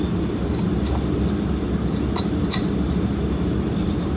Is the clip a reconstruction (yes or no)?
no